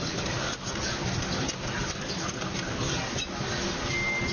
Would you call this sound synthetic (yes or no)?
no